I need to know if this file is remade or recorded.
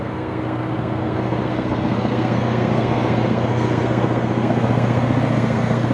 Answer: remade